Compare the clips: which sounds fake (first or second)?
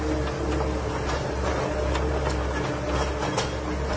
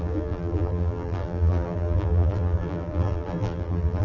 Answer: second